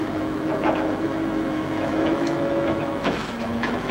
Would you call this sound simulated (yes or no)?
yes